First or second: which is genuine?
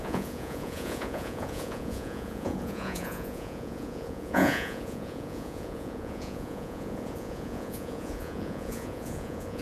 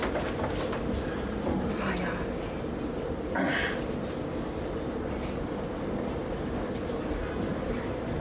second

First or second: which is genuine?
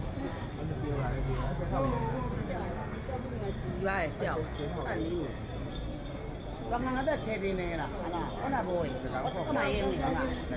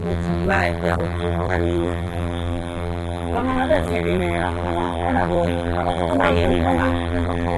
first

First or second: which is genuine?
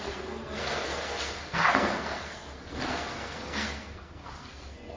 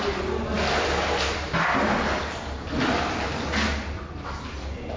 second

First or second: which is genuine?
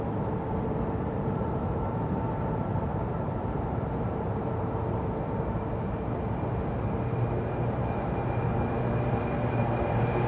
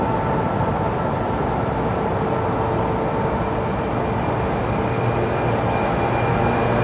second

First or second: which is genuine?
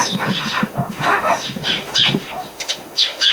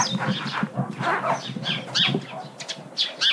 second